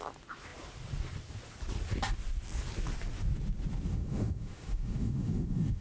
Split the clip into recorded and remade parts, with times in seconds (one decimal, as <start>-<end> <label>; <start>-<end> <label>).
0.0-3.9 recorded; 3.9-5.8 remade